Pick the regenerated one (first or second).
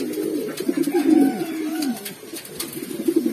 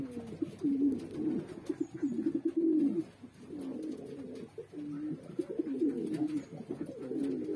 first